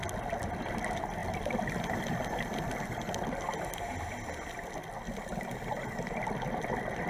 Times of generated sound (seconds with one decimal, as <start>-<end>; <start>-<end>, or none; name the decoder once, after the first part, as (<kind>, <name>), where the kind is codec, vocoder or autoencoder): 1.2-1.8 (vocoder, BigVGAN v2)